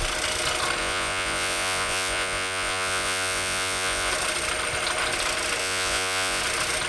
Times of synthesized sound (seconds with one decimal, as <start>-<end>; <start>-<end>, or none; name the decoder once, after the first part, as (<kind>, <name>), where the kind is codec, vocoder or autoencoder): 0.8-4.1 (vocoder, Vocos); 5.6-6.4